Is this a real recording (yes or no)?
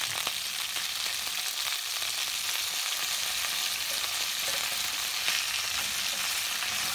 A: yes